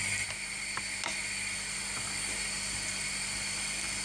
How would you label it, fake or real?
real